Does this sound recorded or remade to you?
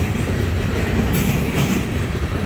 recorded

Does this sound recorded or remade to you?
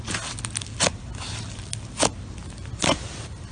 recorded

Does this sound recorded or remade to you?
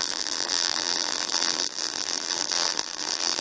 remade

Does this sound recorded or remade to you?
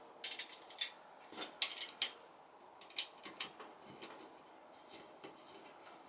recorded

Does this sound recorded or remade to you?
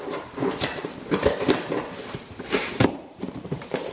remade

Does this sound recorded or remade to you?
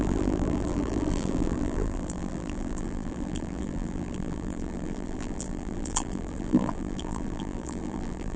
remade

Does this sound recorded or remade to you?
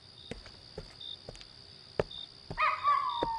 recorded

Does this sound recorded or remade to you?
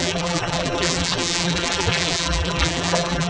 remade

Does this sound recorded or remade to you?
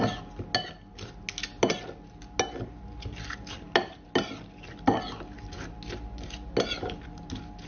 recorded